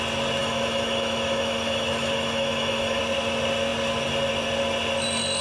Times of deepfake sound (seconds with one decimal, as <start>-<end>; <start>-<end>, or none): 0.4-3.0